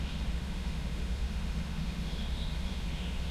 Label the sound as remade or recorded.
remade